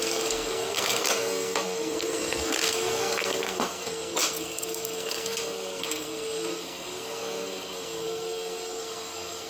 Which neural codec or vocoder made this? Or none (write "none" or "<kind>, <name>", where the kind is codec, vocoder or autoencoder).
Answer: codec, SNAC